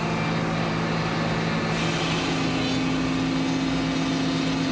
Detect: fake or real real